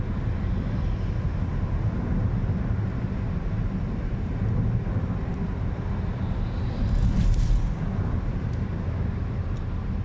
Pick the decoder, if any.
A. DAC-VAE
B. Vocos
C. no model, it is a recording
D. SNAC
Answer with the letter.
C